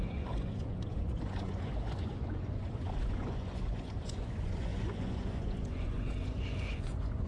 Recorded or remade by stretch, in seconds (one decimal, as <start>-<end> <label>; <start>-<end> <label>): 0.0-7.3 remade